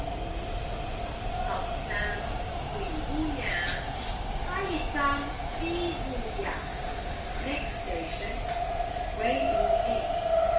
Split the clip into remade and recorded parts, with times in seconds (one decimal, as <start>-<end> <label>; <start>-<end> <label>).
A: 0.0-6.4 recorded; 6.4-7.8 remade; 7.8-10.6 recorded